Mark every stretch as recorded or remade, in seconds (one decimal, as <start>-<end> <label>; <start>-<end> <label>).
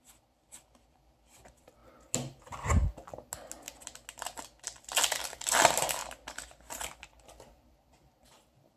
0.0-1.8 remade; 1.8-5.3 recorded; 5.3-6.0 remade; 6.0-7.5 recorded; 7.5-8.8 remade